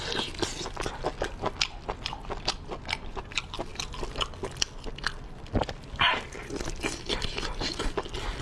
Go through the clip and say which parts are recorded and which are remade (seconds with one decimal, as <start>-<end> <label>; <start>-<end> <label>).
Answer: 0.0-8.4 recorded